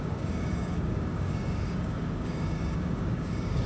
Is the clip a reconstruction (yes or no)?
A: yes